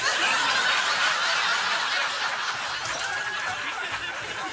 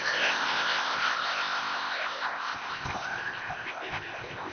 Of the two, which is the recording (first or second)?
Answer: first